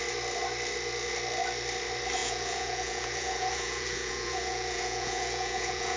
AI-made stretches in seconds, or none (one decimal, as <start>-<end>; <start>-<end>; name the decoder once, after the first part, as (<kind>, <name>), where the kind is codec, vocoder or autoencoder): 2.2-6.0 (vocoder, Vocos)